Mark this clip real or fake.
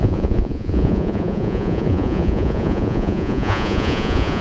fake